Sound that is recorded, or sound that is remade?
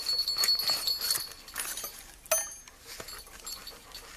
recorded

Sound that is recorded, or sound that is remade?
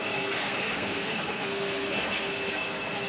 remade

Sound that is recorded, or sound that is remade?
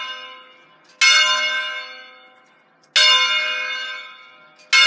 recorded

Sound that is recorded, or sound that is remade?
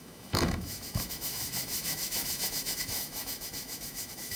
remade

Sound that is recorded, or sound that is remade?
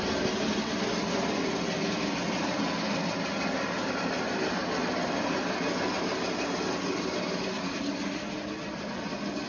recorded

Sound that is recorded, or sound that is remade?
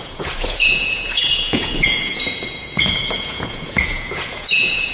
remade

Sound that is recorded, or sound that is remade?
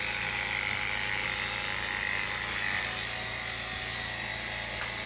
recorded